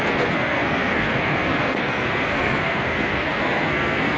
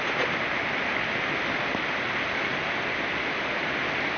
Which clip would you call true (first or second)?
second